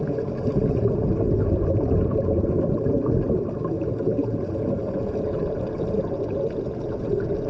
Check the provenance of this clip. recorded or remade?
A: recorded